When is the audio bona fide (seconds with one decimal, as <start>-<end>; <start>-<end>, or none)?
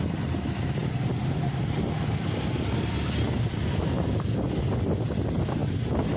0.0-6.2